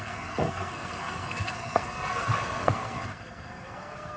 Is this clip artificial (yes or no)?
yes